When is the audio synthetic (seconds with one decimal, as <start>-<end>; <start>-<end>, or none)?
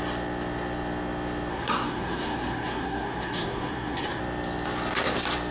1.5-4.2